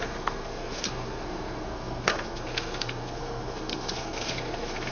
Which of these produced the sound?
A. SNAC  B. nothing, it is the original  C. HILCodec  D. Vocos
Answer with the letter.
A